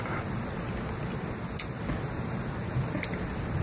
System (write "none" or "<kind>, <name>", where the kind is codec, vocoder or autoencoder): none